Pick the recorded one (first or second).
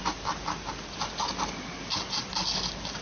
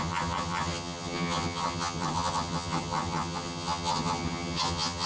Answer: first